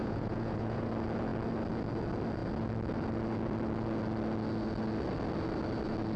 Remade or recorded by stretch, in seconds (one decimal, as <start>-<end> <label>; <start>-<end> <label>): 0.0-0.9 remade; 0.9-6.2 recorded